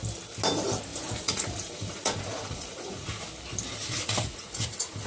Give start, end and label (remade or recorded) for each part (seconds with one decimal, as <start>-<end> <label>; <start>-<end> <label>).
0.0-0.9 recorded; 0.9-3.1 remade; 3.1-3.8 recorded; 3.8-5.1 remade